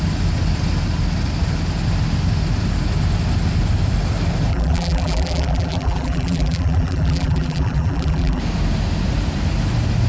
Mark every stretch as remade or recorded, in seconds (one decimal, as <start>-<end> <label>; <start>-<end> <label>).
0.0-4.5 recorded; 4.5-8.4 remade; 8.4-10.1 recorded